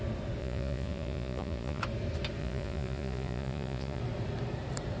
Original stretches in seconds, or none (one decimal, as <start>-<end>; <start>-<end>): 0.0-0.4; 1.8-2.4; 4.0-5.0